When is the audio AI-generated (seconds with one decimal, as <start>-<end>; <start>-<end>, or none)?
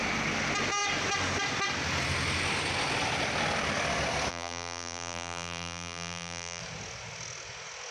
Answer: 4.3-6.6